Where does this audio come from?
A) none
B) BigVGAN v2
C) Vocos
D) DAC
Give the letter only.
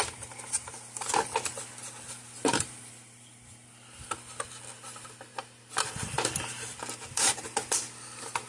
A